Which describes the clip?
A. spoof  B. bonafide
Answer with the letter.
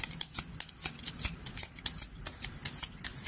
A